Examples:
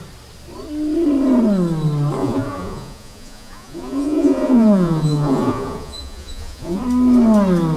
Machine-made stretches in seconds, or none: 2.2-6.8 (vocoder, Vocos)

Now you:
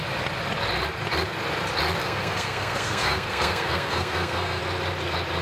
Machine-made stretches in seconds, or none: 2.0-4.6 (codec, SNAC)